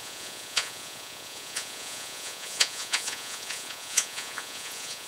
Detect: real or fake fake